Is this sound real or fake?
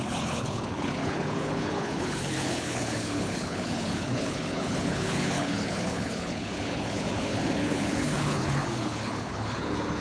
fake